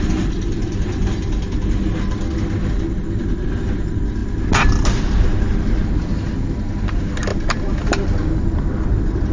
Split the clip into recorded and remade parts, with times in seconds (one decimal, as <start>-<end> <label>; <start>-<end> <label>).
0.0-7.3 recorded; 7.3-8.6 remade; 8.6-9.3 recorded